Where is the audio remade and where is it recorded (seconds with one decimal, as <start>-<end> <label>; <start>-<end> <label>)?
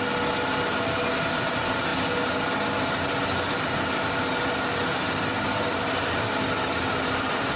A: 0.0-7.6 recorded